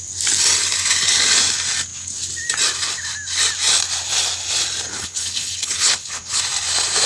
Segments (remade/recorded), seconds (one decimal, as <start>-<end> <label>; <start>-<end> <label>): 0.0-4.9 recorded; 4.9-6.4 remade; 6.4-7.1 recorded